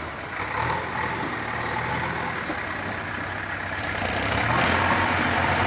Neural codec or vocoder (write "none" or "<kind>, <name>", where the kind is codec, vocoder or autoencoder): none